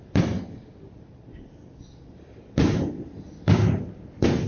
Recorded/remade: recorded